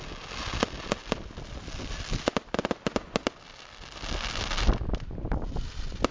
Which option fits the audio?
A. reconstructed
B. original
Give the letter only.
B